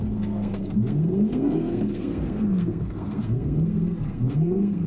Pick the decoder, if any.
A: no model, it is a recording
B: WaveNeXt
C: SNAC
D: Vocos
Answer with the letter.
C